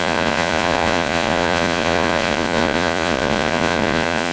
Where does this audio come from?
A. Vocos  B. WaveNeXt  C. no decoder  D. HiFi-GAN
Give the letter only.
A